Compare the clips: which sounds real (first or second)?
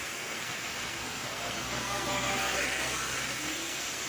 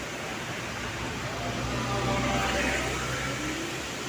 second